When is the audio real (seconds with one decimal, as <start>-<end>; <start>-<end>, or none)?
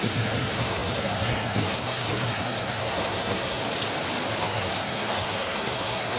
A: 3.6-4.4